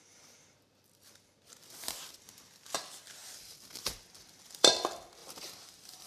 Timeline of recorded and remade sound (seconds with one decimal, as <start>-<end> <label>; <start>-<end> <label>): 0.0-3.2 recorded; 3.2-4.7 remade; 4.7-5.2 recorded; 5.2-6.1 remade